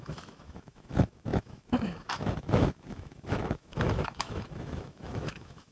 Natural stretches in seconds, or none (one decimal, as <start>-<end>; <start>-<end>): none